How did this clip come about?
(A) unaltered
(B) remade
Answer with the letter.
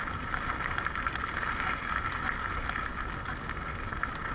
A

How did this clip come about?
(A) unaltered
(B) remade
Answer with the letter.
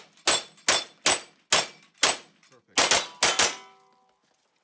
A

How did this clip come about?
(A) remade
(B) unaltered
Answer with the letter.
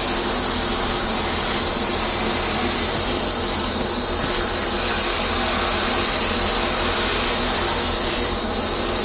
B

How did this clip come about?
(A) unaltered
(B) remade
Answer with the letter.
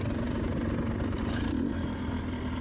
A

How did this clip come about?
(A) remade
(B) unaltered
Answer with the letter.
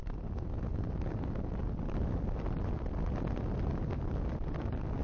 B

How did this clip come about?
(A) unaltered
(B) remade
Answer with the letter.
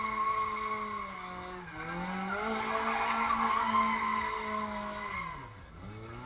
A